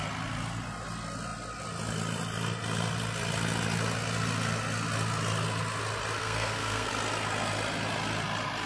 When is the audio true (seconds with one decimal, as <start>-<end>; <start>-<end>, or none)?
0.0-6.2; 6.9-8.7